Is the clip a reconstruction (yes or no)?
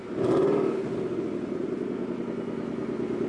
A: no